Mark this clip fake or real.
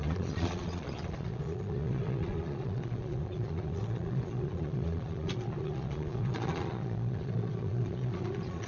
fake